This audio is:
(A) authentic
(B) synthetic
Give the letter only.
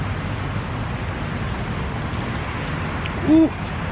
A